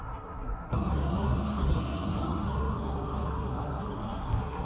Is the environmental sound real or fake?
fake